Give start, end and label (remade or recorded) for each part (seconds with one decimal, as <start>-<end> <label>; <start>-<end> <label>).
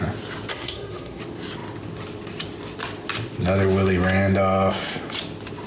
0.0-0.5 recorded; 0.5-1.2 remade; 1.2-5.7 recorded